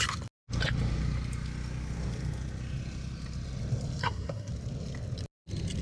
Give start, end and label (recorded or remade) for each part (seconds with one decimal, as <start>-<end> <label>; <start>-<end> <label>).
0.0-4.0 recorded; 4.0-4.5 remade; 4.5-5.8 recorded

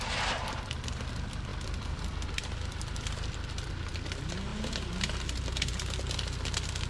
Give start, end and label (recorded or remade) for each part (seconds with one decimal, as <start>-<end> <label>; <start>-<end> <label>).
0.0-6.9 recorded

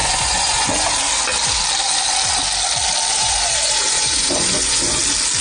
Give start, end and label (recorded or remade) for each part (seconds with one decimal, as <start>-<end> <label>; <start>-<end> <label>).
0.0-0.9 remade; 0.9-3.1 recorded; 3.1-5.0 remade; 5.0-5.4 recorded

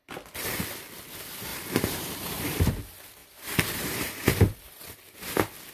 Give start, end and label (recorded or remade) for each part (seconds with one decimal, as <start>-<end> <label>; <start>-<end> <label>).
0.0-1.5 recorded; 1.5-2.6 remade; 2.6-3.2 recorded; 3.2-4.8 remade; 4.8-5.7 recorded